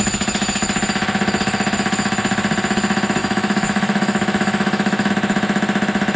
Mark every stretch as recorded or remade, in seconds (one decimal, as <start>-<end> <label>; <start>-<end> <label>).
0.0-3.2 recorded; 3.2-5.1 remade; 5.1-6.2 recorded